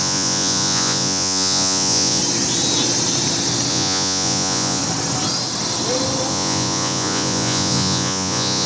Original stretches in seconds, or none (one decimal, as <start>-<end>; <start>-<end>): 2.2-3.7; 4.8-6.3